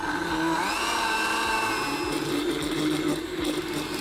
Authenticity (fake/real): real